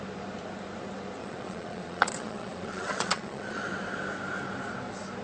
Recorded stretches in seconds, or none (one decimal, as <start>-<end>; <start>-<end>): 0.0-1.2; 3.6-5.2